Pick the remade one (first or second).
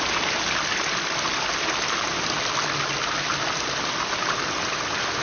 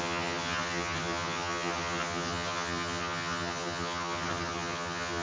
second